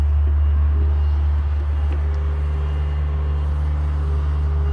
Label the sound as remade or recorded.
recorded